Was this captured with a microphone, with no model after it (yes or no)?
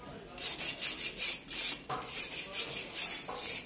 yes